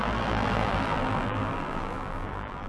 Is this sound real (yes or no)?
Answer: no